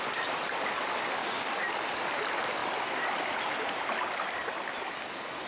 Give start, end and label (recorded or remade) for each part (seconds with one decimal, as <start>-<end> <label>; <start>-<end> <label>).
0.0-1.2 recorded; 1.2-1.8 remade; 1.8-5.5 recorded